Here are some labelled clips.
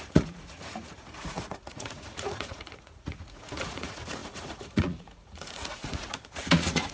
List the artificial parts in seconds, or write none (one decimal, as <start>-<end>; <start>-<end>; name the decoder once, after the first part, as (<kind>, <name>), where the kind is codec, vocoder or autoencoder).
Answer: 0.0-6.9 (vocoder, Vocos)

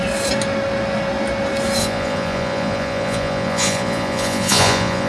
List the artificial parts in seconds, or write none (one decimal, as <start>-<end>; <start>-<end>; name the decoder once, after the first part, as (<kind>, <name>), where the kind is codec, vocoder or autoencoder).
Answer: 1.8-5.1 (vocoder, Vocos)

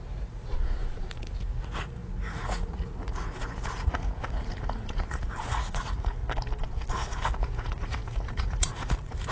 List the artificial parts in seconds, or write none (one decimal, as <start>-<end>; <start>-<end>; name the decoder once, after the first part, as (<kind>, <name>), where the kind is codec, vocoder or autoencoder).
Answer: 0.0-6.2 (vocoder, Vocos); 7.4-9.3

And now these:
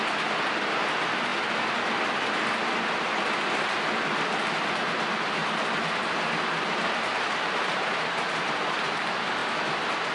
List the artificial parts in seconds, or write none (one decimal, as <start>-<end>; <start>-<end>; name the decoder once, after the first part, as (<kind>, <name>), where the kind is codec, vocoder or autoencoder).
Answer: none

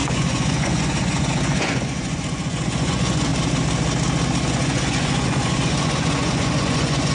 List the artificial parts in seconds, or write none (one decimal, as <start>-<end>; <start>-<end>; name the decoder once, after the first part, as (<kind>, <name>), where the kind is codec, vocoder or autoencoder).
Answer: 0.0-3.3 (vocoder, Vocos); 4.5-7.1